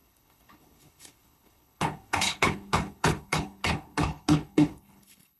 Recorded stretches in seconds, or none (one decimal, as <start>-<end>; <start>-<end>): none